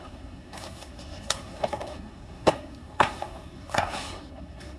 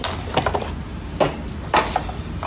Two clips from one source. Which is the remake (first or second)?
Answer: first